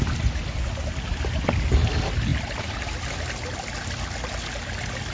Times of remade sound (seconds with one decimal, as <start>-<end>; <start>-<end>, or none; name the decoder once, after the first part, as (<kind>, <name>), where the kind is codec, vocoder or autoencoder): none